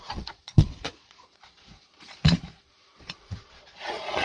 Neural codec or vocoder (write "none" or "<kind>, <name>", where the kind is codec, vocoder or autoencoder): vocoder, Vocos